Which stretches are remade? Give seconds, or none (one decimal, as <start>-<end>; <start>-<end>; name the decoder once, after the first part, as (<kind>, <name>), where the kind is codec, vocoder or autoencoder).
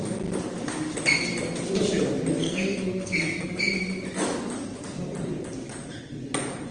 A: 2.4-3.5 (codec, SNAC)